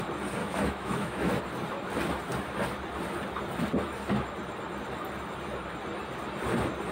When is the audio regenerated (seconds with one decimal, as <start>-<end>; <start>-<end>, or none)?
0.4-1.4